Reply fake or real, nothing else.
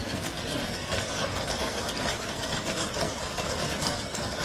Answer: fake